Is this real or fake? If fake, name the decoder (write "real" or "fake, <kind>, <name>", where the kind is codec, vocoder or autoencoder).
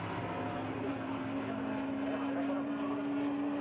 real